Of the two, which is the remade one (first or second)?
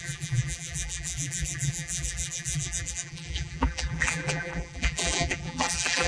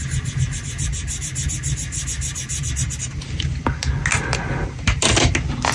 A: first